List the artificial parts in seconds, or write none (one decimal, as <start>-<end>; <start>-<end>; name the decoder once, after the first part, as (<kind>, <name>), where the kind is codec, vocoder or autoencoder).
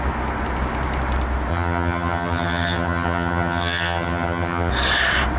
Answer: 1.5-4.7 (vocoder, HiFi-GAN)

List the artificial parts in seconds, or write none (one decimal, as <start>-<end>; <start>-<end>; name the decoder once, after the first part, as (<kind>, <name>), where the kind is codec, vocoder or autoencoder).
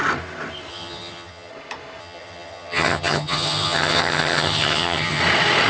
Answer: 0.7-1.5 (vocoder, HiFi-GAN); 2.0-5.2